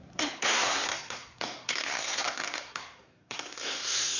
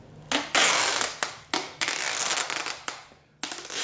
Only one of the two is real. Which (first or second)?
second